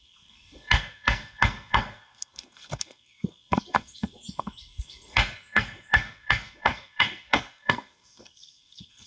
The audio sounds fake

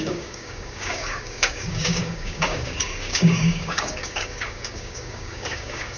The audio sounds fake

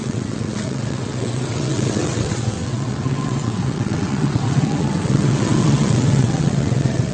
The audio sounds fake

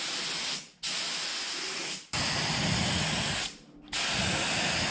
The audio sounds real